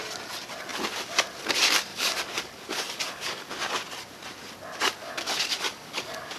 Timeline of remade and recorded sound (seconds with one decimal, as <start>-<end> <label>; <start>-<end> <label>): 0.0-1.9 recorded; 1.9-3.5 remade; 3.5-5.0 recorded; 5.0-6.4 remade